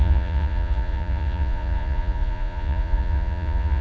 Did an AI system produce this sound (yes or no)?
yes